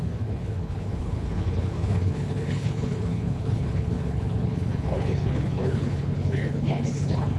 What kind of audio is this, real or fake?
fake